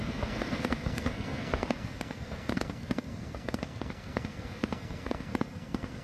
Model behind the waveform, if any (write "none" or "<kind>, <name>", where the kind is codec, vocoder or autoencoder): codec, SNAC